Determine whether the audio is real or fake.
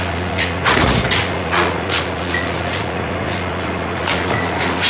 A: fake